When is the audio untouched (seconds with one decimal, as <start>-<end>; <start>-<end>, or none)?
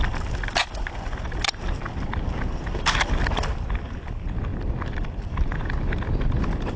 0.0-6.8